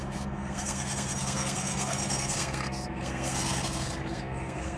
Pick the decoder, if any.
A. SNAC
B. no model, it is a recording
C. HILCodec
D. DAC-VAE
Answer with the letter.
A